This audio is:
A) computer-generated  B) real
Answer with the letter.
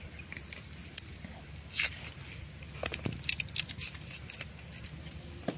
B